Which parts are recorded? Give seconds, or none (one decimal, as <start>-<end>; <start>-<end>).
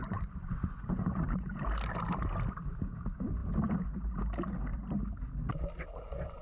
1.6-6.4